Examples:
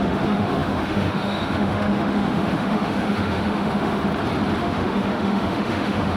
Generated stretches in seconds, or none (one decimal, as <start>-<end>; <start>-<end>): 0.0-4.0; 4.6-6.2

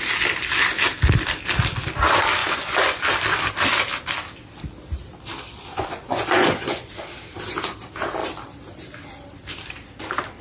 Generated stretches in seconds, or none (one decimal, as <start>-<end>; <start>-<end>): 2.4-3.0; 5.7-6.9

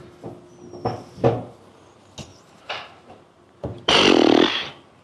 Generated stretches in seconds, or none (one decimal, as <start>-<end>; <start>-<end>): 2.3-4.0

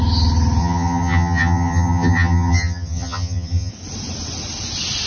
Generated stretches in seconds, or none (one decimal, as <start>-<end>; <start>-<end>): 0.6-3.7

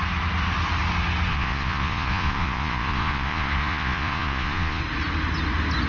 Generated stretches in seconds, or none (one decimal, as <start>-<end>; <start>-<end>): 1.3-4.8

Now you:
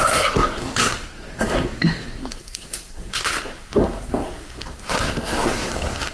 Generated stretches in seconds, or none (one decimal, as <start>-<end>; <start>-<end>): 0.0-6.1

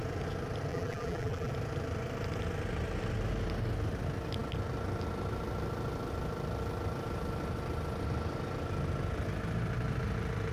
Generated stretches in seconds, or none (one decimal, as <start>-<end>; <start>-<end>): 0.7-1.5

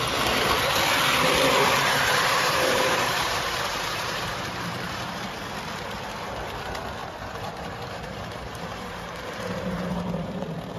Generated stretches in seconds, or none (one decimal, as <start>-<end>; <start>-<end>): 1.9-5.0; 7.0-10.4